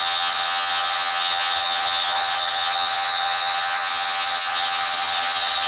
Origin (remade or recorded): remade